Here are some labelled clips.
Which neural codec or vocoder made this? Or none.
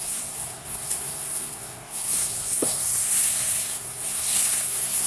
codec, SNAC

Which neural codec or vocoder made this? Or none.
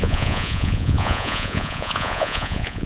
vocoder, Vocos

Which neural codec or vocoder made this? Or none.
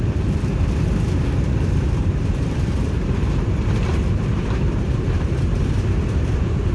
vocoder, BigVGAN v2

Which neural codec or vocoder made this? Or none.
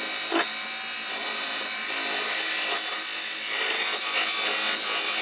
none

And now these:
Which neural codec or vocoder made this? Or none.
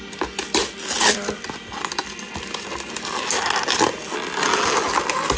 none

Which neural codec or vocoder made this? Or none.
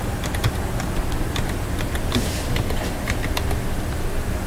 none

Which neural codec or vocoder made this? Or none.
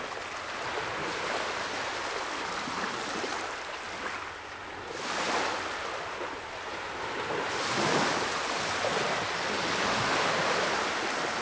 none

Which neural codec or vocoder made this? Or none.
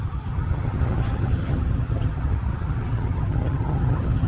vocoder, HiFi-GAN